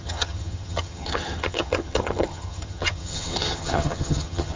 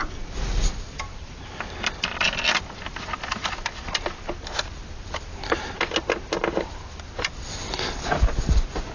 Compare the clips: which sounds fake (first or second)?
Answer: first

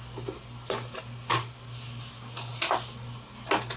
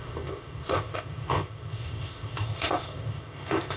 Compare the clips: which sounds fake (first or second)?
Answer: second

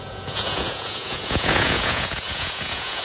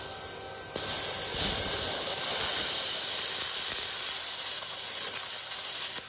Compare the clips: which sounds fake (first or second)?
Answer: first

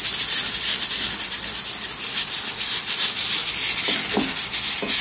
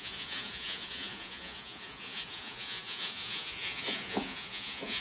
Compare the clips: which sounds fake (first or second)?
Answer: second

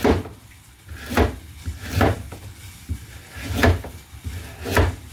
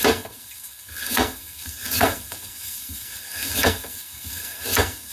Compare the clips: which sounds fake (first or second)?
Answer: second